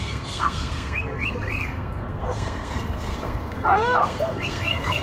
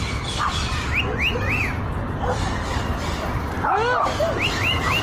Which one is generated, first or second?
first